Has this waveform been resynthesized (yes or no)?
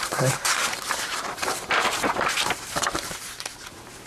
yes